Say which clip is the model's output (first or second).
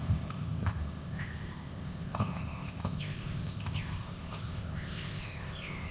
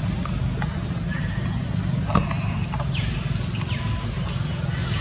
first